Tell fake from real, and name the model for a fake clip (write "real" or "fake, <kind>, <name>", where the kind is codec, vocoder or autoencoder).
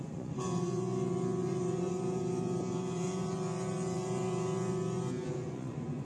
fake, vocoder, Vocos